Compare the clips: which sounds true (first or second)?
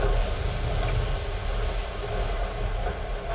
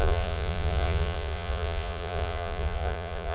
first